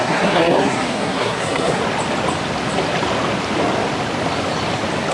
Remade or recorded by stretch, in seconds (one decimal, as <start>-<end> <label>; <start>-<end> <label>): 0.0-1.8 remade; 1.8-5.1 recorded